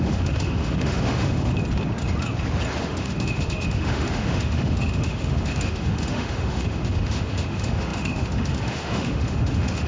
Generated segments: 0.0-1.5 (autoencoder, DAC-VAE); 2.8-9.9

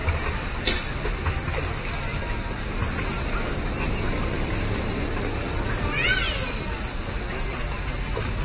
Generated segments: none

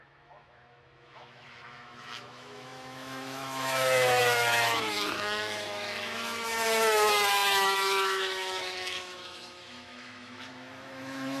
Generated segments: 0.0-11.4 (autoencoder, DAC-VAE)